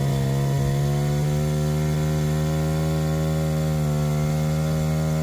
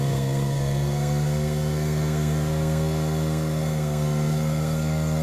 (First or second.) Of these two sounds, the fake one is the second